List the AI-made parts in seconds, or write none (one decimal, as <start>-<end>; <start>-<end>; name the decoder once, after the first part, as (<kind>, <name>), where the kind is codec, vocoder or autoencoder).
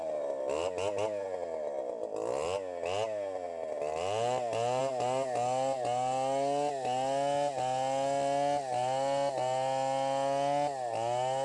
none